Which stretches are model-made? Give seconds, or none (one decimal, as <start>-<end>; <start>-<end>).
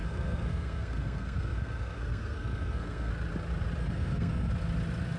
0.0-3.1; 3.8-4.5